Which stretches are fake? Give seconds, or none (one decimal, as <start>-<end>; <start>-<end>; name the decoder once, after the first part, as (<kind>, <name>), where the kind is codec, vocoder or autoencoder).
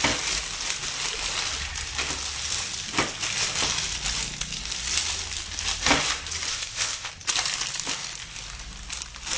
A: 6.5-7.1 (codec, ZipCodec)